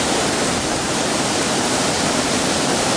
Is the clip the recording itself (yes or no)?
no